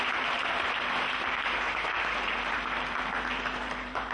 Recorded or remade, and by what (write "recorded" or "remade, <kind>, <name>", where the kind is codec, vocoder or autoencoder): remade, vocoder, BigVGAN v2